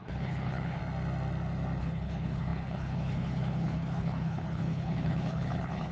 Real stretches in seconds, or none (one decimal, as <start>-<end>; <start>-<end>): 0.8-1.8